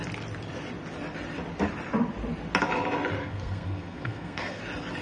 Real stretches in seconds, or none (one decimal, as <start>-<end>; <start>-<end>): 0.0-3.2; 4.6-5.0